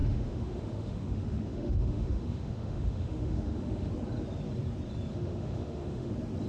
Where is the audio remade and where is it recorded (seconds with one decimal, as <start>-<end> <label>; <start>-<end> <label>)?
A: 0.0-3.9 remade; 3.9-5.1 recorded; 5.1-6.1 remade; 6.1-6.5 recorded